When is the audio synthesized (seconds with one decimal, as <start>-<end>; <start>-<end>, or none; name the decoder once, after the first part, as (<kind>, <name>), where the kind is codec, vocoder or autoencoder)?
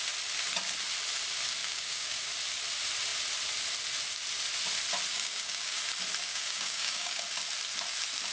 1.6-2.2 (codec, DAC); 5.1-5.8; 6.3-7.2